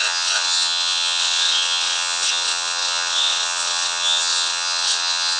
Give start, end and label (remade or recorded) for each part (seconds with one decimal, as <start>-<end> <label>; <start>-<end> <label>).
0.0-5.4 remade